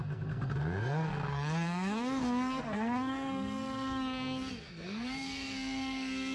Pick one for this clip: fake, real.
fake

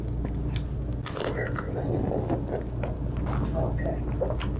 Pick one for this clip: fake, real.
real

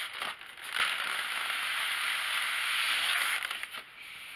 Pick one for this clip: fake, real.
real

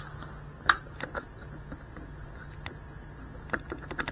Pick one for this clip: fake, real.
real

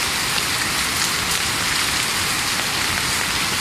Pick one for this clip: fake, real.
real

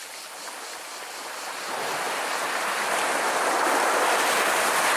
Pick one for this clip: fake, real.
real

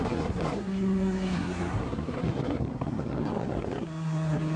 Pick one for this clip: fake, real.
fake